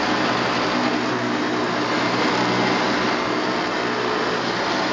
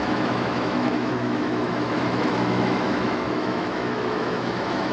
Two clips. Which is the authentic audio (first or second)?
first